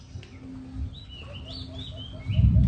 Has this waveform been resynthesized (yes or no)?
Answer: no